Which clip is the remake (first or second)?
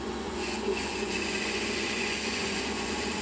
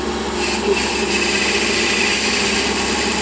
first